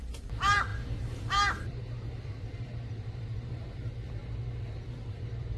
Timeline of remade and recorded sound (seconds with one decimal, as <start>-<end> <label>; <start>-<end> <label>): 0.0-4.2 remade; 4.2-5.1 recorded; 5.1-5.6 remade